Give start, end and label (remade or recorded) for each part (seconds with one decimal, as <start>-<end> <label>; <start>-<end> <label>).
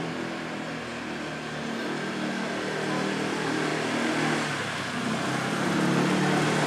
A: 0.0-6.7 recorded